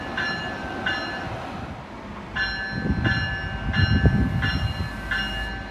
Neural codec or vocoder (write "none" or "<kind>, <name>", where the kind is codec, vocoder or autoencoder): none